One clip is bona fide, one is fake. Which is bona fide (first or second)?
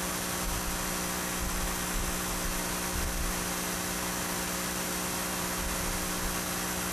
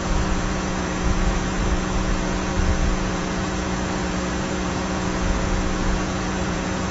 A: first